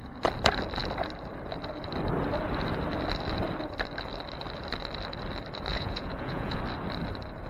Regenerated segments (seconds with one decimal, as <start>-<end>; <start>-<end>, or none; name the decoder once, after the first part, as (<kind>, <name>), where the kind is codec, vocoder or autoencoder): 5.7-6.6 (vocoder, Vocos)